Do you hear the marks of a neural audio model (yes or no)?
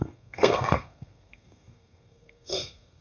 yes